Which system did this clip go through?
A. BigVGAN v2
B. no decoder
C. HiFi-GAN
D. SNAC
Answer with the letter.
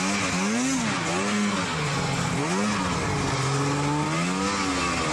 B